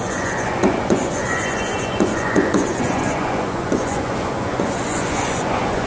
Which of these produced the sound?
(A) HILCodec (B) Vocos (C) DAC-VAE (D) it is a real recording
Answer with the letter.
B